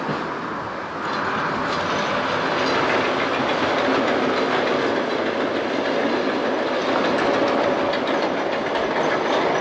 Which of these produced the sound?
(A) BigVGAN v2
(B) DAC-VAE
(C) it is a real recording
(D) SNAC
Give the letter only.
C